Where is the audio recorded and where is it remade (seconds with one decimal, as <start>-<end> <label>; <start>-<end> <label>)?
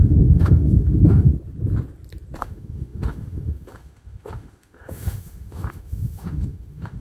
0.0-1.3 remade; 1.3-2.4 recorded; 2.4-7.0 remade